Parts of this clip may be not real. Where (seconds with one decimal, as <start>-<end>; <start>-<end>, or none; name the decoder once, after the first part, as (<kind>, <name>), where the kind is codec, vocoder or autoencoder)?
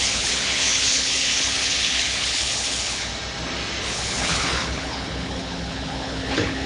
0.0-3.1 (codec, HILCodec); 3.8-6.7